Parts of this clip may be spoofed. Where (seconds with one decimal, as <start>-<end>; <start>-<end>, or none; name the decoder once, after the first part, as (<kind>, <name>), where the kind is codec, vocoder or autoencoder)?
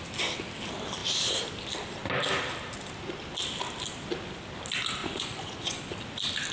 5.0-5.8 (vocoder, Vocos)